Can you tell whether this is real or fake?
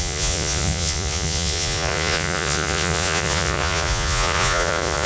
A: fake